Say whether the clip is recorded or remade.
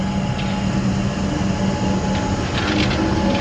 recorded